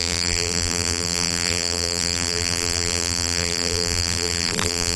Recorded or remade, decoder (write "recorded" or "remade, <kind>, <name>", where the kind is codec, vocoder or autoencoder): remade, vocoder, BigVGAN v2